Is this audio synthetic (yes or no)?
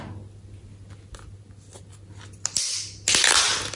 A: no